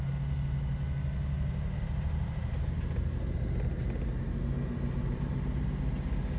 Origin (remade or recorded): recorded